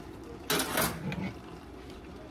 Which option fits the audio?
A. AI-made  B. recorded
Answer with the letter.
B